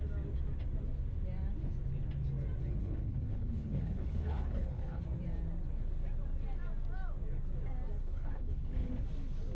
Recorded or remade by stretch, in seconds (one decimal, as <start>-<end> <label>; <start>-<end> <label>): 0.0-2.8 recorded; 2.8-5.0 remade; 5.0-8.0 recorded; 8.0-8.9 remade; 8.9-9.5 recorded